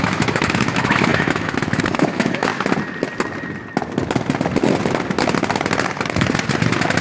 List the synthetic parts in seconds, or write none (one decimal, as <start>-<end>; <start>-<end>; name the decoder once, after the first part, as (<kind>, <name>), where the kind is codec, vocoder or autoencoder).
0.0-2.5 (autoencoder, DAC-VAE)